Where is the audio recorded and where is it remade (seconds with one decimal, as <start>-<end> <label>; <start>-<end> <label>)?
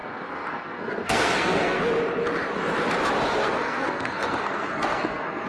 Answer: 0.0-1.8 remade; 1.8-3.4 recorded; 3.4-5.5 remade